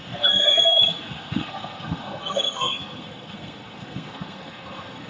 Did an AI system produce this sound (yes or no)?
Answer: yes